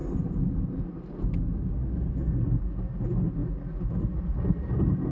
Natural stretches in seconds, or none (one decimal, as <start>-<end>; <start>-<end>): 0.0-5.1